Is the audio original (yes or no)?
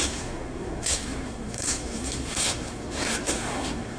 no